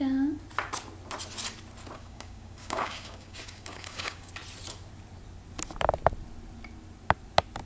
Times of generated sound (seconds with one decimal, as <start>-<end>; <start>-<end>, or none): 2.0-4.3